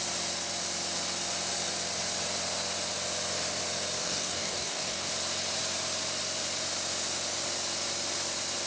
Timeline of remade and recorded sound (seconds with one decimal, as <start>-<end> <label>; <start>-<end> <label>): 0.0-4.0 recorded; 4.0-5.1 remade; 5.1-8.7 recorded